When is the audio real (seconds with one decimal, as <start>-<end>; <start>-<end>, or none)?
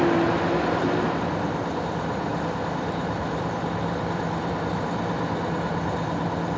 0.0-6.6